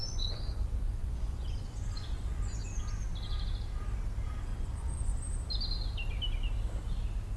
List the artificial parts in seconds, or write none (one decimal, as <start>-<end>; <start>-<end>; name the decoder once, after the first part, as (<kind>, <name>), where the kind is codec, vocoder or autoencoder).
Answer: 0.0-2.8 (vocoder, Vocos); 4.5-5.4